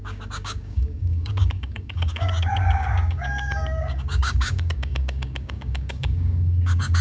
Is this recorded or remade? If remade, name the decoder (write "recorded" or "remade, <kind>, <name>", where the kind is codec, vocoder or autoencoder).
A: remade, codec, DAC